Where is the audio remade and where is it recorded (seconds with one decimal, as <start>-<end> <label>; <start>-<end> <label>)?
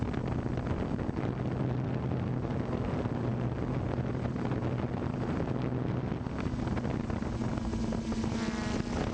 0.0-9.1 recorded